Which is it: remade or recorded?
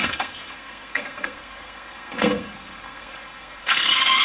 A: remade